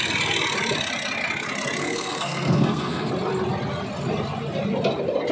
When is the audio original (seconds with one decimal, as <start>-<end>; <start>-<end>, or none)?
0.0-1.8; 3.1-5.3